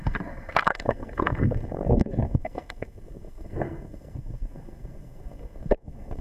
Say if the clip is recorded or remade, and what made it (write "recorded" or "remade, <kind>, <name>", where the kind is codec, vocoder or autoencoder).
remade, codec, SNAC